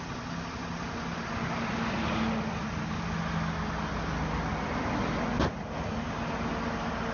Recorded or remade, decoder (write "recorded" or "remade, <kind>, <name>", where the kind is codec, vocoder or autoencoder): recorded